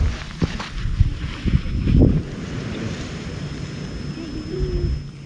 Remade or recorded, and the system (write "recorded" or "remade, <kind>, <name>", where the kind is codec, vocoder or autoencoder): recorded